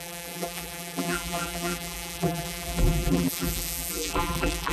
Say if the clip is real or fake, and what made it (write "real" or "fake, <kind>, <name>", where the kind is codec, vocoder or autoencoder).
fake, vocoder, BigVGAN v2